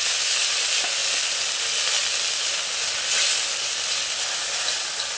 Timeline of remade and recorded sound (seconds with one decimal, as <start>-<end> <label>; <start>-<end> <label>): 0.0-5.2 recorded